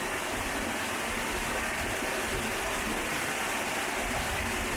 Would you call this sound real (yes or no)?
yes